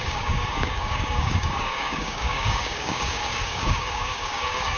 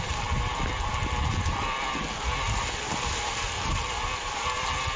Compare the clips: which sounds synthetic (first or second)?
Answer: first